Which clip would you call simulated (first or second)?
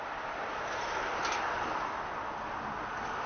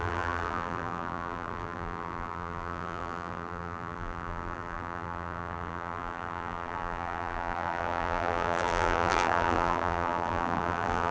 second